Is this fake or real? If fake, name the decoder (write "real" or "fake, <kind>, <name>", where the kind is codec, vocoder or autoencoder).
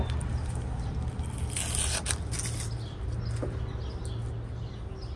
real